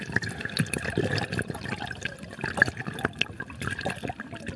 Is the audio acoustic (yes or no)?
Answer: yes